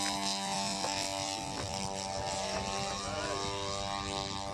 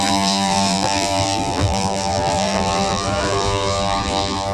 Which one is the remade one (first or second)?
second